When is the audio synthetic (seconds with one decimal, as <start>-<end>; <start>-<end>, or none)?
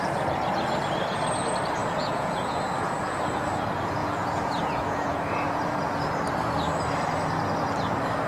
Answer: 1.8-3.5; 4.0-5.8